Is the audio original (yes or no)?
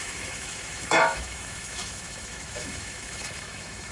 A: no